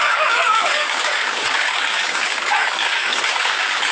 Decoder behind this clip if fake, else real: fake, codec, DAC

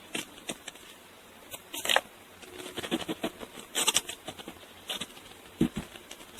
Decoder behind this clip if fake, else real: real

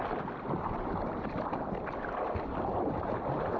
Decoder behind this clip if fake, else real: real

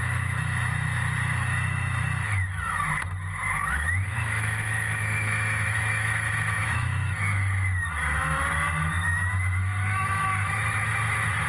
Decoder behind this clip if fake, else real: fake, autoencoder, DAC-VAE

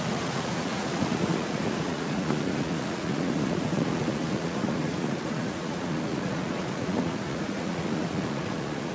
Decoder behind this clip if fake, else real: fake, vocoder, Vocos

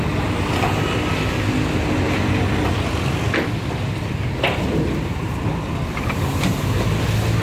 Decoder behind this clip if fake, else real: real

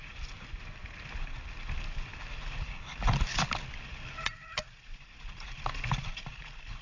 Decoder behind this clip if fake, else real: real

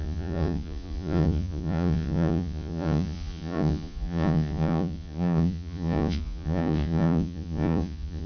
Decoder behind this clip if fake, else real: fake, vocoder, Vocos